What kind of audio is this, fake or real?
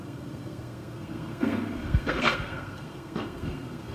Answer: fake